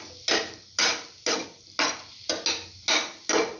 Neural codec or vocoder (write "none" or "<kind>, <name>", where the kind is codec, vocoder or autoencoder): none